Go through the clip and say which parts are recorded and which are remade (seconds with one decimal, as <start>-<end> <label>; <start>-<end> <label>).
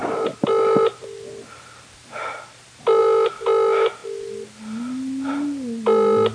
0.0-6.3 recorded